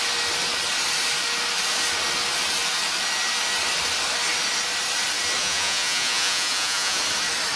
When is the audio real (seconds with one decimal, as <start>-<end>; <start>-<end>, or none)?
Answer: 0.0-5.4; 7.0-7.6